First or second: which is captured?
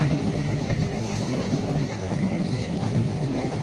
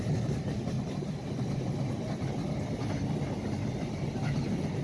second